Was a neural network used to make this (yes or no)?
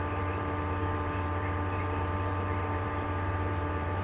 yes